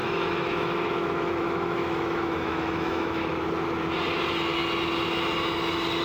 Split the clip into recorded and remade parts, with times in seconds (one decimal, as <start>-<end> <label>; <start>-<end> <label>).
0.0-3.3 remade; 3.3-6.0 recorded